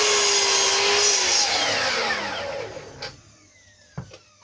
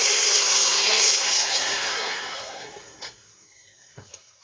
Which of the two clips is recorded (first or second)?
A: first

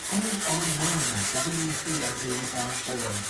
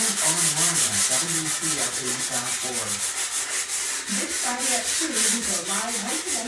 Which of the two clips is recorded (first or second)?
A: second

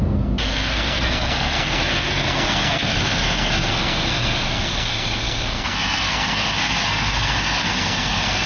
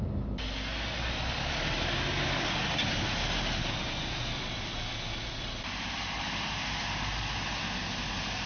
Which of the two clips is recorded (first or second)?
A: second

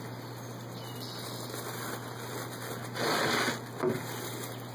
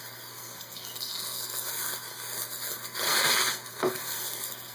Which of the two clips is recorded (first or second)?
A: first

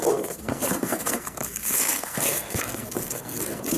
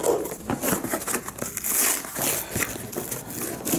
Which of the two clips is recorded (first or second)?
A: second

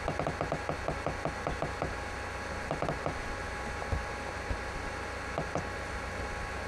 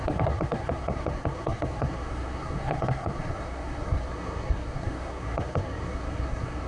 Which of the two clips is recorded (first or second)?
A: first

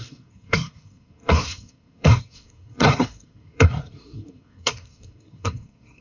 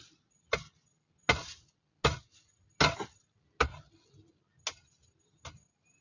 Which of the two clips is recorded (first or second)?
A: second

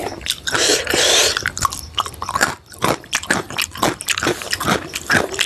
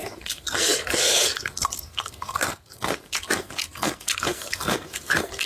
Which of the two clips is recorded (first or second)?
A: first